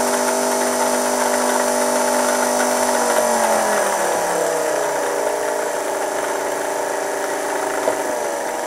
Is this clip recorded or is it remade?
recorded